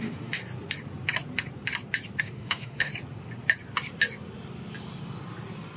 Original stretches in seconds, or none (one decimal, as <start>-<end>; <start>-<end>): 0.4-2.2; 2.9-5.8